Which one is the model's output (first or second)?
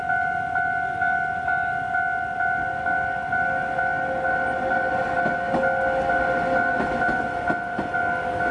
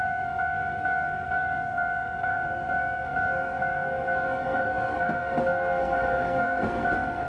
second